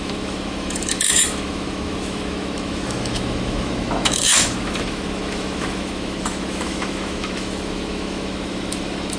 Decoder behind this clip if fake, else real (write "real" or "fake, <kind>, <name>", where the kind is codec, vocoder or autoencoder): fake, autoencoder, DAC-VAE